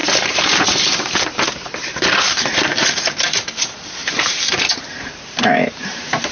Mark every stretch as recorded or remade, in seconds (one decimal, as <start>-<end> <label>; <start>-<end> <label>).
0.0-2.3 remade; 2.3-4.0 recorded; 4.0-6.3 remade